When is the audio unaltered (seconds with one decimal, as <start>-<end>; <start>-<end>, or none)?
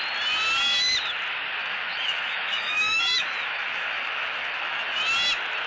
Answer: 0.0-1.6; 5.0-5.7